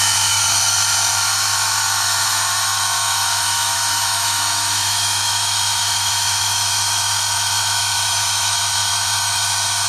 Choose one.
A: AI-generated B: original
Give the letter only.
A